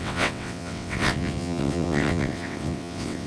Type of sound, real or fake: fake